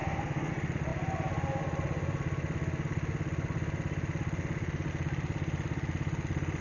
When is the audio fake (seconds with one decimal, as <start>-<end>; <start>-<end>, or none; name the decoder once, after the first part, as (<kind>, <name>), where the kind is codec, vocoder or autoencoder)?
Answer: 0.0-0.5 (codec, SNAC)